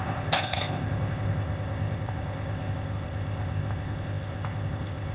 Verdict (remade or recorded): remade